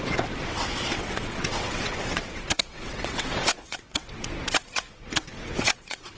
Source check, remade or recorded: remade